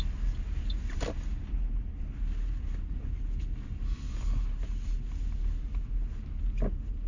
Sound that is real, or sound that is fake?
real